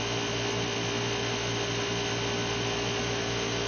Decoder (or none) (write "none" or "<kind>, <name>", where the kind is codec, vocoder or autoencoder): none